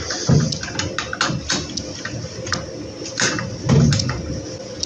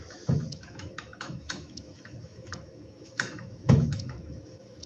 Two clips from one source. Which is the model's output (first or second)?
second